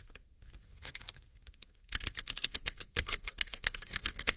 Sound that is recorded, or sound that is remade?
remade